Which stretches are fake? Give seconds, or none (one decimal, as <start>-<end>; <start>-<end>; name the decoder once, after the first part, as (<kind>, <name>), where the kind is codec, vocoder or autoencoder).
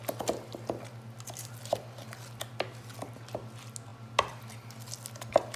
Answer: none